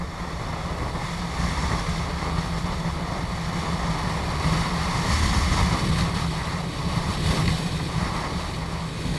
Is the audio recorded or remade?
recorded